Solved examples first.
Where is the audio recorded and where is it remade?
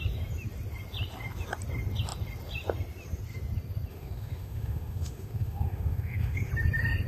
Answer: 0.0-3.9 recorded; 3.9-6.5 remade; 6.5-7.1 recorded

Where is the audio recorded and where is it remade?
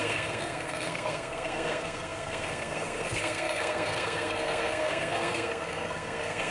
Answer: 0.0-6.5 remade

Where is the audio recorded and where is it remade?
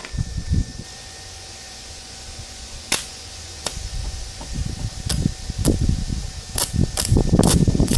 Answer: 0.0-4.6 remade; 4.6-7.5 recorded; 7.5-8.0 remade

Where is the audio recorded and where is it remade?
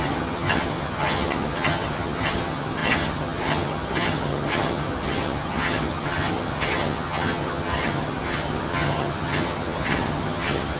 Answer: 0.0-10.8 remade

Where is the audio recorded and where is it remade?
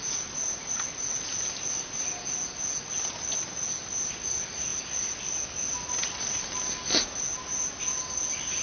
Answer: 0.0-8.6 recorded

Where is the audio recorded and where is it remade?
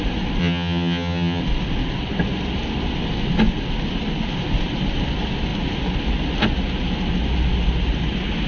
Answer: 0.0-0.4 recorded; 0.4-1.4 remade; 1.4-8.5 recorded